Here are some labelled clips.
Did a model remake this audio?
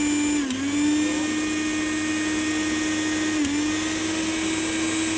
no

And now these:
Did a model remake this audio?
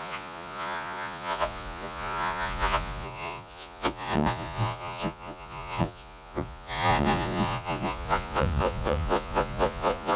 yes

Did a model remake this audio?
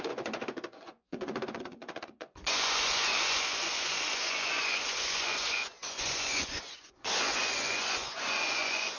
yes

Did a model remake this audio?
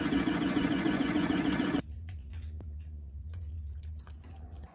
yes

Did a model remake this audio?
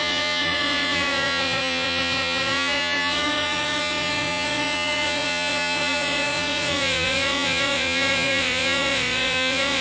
yes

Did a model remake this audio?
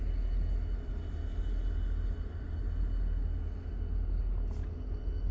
no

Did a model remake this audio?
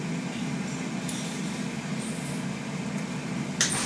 no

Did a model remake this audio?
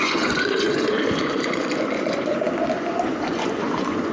yes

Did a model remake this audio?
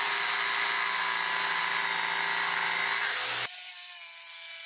no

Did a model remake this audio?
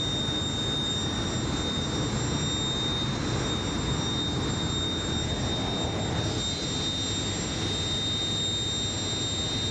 no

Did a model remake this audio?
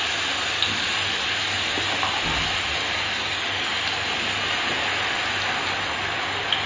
no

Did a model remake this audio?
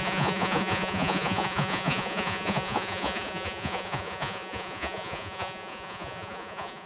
yes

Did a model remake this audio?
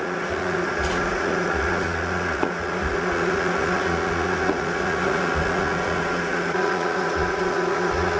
yes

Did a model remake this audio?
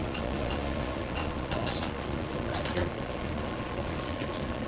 yes